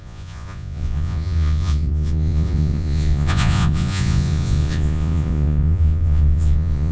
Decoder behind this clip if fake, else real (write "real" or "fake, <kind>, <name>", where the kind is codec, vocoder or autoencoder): fake, vocoder, Vocos